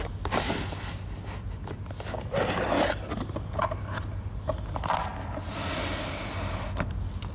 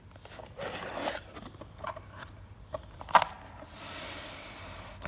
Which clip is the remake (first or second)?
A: second